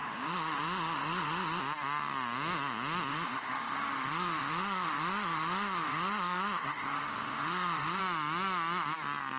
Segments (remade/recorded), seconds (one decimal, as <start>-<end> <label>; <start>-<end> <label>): 0.0-1.6 remade; 1.6-3.1 recorded; 3.1-8.0 remade; 8.0-9.4 recorded